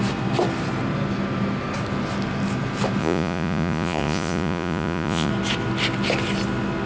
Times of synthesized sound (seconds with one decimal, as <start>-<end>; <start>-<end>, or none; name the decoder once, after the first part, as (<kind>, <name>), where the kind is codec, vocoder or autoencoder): 3.0-5.3 (vocoder, Vocos)